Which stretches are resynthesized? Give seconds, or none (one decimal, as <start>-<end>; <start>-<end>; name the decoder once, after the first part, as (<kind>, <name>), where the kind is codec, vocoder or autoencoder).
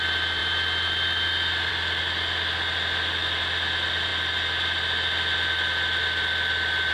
none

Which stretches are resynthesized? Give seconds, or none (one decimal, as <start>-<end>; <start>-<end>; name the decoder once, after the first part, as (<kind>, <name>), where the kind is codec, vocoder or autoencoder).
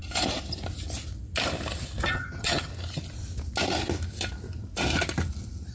2.1-2.7 (vocoder, HiFi-GAN)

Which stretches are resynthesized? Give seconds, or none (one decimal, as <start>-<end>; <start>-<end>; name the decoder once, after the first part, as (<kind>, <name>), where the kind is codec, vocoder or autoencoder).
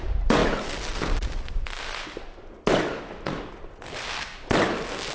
none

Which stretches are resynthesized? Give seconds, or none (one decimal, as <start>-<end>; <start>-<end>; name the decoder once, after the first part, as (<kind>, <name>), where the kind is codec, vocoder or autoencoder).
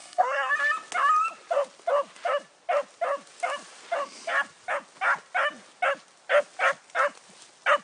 0.0-0.5 (codec, SNAC)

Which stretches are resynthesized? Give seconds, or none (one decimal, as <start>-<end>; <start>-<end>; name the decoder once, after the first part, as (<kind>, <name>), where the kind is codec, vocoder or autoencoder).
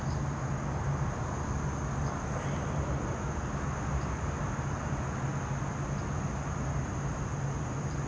none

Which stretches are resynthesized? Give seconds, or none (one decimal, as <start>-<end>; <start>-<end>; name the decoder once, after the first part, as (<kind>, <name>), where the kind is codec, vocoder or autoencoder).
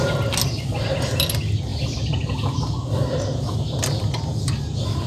none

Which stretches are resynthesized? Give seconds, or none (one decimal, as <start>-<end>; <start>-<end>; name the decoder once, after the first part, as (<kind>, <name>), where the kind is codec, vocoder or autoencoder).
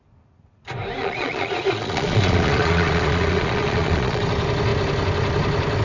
1.0-4.2 (vocoder, Vocos)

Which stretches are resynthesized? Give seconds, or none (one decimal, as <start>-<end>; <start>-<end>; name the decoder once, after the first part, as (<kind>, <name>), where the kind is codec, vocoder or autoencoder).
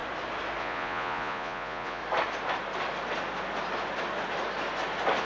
0.6-2.0 (vocoder, Vocos)